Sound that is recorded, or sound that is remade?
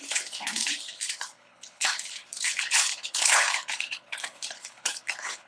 remade